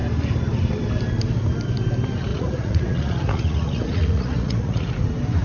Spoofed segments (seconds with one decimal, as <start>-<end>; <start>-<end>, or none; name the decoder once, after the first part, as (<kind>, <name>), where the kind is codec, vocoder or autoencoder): 2.3-4.9 (vocoder, Vocos)